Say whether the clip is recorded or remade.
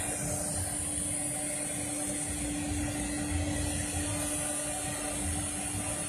recorded